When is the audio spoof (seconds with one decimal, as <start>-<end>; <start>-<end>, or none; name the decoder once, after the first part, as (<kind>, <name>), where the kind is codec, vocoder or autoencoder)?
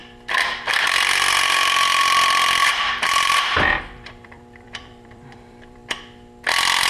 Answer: 0.0-5.8 (vocoder, BigVGAN v2)